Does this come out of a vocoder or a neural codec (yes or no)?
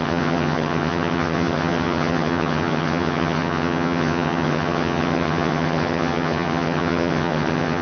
yes